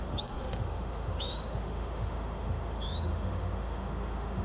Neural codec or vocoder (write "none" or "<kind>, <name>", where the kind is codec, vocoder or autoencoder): autoencoder, DAC-VAE